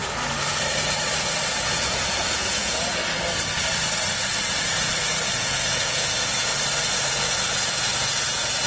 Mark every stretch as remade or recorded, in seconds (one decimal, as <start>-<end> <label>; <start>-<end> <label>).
0.0-1.5 recorded; 1.5-3.0 remade; 3.0-4.4 recorded; 4.4-6.5 remade; 6.5-7.1 recorded; 7.1-8.7 remade